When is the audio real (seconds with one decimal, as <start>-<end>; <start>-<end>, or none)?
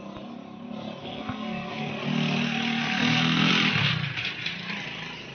0.0-1.0; 1.9-2.8; 3.5-5.3